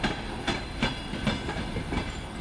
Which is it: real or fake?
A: real